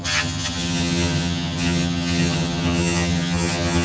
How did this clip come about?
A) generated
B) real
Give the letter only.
A